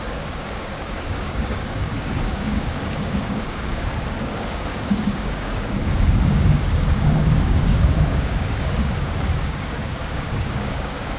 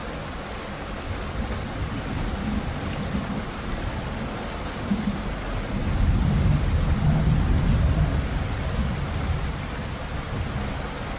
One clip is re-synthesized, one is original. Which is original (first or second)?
second